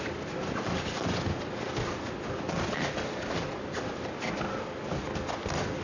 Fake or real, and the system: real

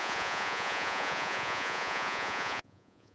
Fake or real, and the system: fake, vocoder, Vocos